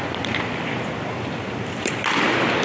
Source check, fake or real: fake